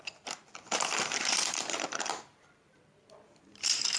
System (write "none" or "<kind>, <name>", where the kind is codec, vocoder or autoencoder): vocoder, BigVGAN v2